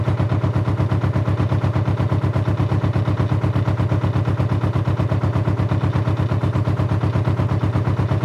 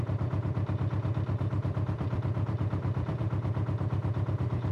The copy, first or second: second